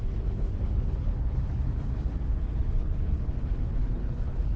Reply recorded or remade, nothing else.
remade